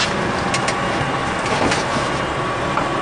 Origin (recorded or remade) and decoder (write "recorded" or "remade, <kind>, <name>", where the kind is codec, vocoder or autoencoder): recorded